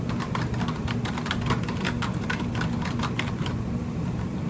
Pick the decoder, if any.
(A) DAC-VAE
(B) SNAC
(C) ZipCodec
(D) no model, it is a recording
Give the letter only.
D